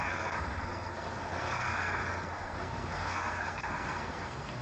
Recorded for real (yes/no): no